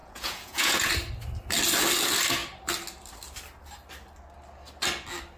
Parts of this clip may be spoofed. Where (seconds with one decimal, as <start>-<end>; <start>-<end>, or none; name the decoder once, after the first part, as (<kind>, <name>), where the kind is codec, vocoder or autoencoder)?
0.0-0.9 (vocoder, Vocos)